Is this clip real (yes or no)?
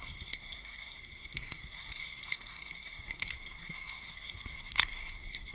no